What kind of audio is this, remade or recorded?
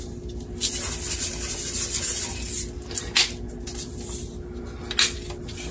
recorded